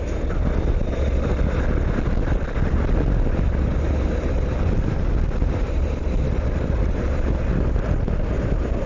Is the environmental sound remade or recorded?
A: recorded